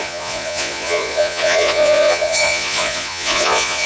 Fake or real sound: fake